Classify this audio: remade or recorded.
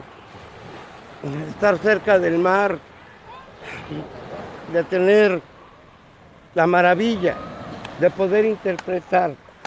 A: recorded